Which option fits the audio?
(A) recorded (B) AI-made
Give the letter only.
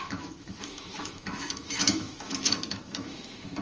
B